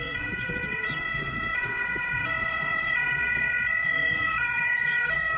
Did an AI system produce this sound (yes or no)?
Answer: yes